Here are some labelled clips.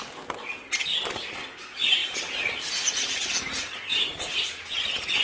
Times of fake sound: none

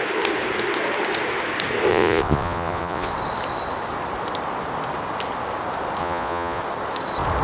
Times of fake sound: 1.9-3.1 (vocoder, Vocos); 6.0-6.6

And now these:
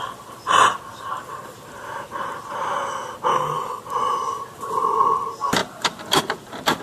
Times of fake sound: 3.3-3.8 (codec, DAC)